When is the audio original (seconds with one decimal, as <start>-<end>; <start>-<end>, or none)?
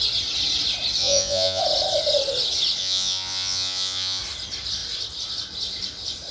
0.0-1.0; 1.6-2.8; 4.2-6.3